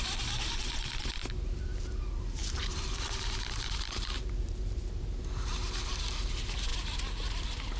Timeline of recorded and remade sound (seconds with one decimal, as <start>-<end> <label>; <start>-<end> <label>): 0.0-2.4 recorded; 2.4-5.0 remade; 5.0-7.8 recorded